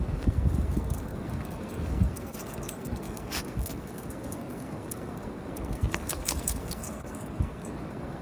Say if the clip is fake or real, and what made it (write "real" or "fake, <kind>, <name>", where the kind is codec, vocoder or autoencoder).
fake, codec, SNAC